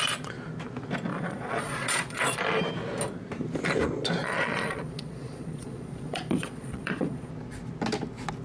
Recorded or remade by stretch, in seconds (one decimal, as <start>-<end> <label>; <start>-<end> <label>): 0.0-1.1 recorded; 1.1-2.4 remade; 2.4-4.2 recorded; 4.2-7.3 remade; 7.3-8.4 recorded